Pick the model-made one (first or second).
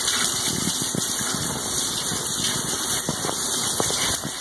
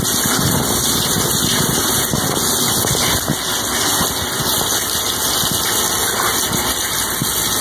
first